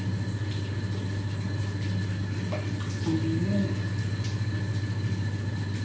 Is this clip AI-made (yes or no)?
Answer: no